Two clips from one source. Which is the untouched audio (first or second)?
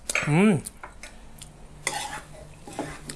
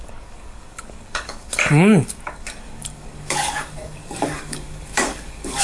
first